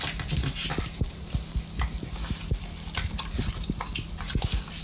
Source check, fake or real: real